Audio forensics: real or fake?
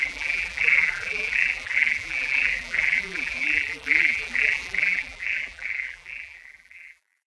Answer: fake